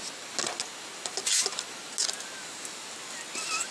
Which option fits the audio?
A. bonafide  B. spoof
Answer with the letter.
A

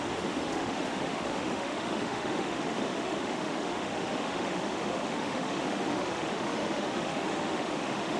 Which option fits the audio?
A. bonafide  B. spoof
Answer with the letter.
B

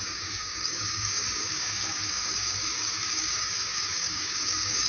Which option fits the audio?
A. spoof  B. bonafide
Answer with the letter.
A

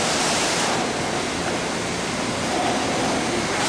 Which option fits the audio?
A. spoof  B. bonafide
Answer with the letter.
B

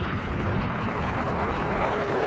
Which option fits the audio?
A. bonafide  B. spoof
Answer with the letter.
B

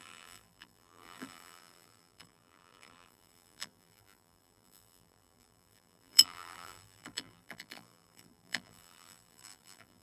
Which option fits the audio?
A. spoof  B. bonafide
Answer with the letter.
A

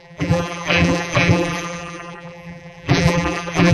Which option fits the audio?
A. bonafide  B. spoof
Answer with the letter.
B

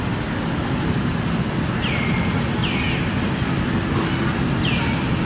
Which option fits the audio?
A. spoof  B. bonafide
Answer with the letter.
B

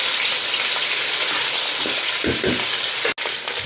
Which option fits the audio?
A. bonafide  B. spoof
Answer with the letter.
A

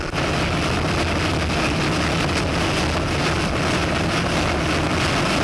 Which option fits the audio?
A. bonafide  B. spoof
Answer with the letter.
A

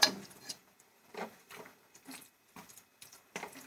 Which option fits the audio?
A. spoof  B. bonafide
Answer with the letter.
B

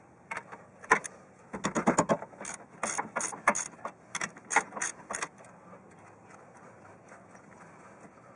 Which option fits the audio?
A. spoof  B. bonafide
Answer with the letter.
B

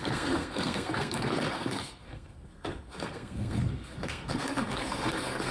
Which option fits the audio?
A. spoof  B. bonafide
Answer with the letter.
A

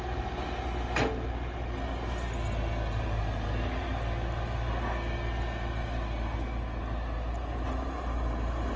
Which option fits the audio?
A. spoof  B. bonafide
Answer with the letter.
B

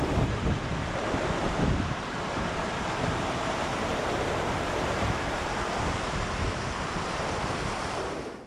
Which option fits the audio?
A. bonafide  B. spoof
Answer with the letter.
B